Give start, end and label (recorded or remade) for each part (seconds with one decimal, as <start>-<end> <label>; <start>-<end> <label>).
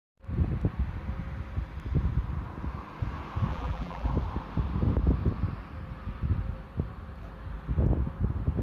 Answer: 0.0-3.5 recorded; 3.5-4.1 remade; 4.1-8.6 recorded